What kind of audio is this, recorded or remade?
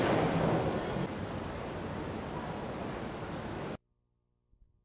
recorded